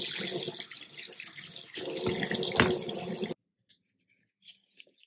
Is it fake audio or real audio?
real